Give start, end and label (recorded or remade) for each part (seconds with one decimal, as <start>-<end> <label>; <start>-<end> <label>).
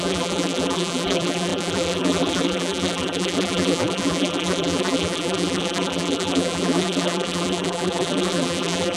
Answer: 0.0-9.0 remade